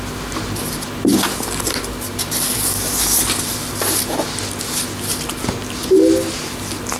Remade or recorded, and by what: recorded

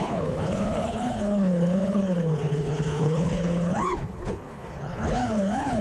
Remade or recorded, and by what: remade, codec, HILCodec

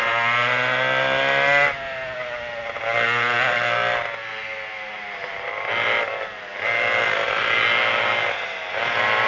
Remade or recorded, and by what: recorded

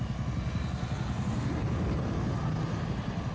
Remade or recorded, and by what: recorded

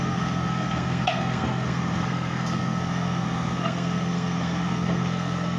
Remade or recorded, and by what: remade, codec, SNAC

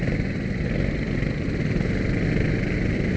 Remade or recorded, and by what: recorded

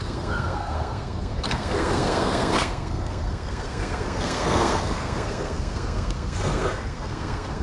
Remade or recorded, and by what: remade, codec, SNAC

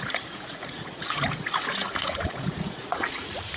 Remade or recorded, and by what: remade, vocoder, Vocos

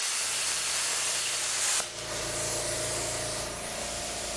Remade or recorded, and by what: recorded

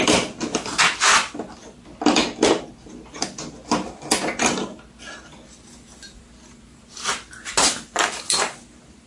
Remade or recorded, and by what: recorded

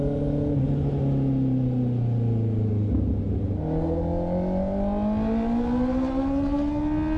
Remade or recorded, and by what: recorded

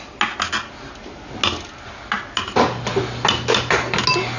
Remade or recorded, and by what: recorded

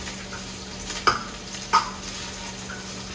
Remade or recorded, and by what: recorded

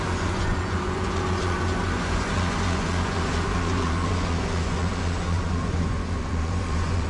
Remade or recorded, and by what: remade, vocoder, Vocos